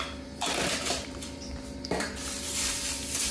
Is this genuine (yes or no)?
no